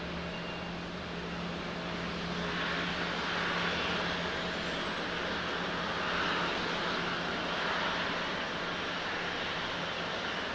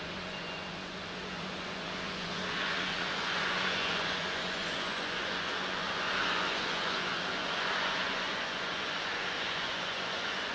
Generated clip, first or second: second